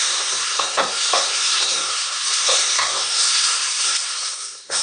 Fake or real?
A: fake